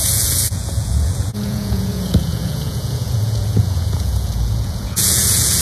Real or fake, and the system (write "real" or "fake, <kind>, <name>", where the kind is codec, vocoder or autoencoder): fake, vocoder, Vocos